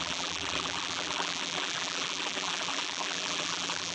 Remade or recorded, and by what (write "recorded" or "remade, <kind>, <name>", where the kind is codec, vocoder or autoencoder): remade, vocoder, BigVGAN v2